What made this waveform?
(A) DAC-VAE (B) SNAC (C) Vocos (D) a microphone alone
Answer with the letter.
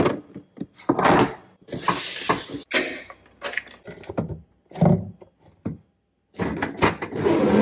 D